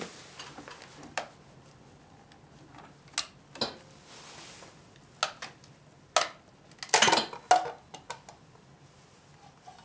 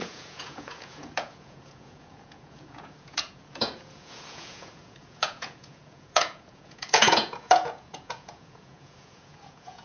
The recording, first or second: first